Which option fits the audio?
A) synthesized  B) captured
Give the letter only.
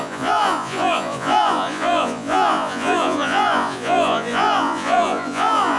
A